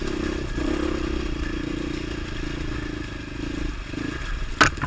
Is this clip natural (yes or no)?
yes